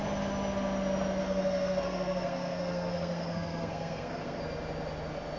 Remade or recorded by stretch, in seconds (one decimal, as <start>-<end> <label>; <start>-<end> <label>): 0.0-1.2 recorded; 1.2-4.4 remade; 4.4-5.4 recorded